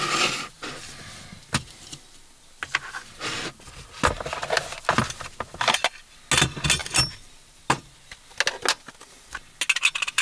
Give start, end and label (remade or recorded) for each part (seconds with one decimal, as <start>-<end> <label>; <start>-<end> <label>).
0.0-6.8 recorded; 6.8-7.3 remade; 7.3-10.2 recorded